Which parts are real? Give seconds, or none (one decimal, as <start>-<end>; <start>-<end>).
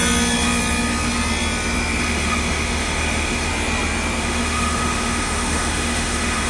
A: 0.0-2.0; 3.5-4.2